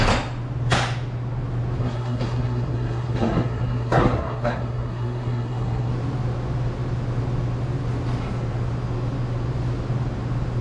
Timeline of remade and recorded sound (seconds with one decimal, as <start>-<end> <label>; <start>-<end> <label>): 0.0-1.8 recorded; 1.8-5.9 remade; 5.9-10.6 recorded